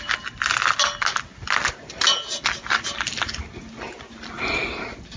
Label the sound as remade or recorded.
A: recorded